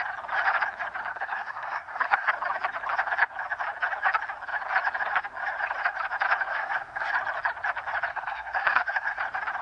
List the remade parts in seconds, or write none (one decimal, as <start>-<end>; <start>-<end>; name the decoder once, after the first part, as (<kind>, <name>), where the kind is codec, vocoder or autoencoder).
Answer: 1.1-2.3 (codec, SNAC); 6.5-7.1; 8.1-9.2